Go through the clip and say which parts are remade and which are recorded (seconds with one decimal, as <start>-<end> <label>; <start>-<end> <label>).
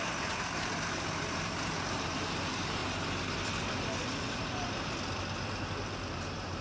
0.0-2.8 remade; 2.8-6.1 recorded; 6.1-6.6 remade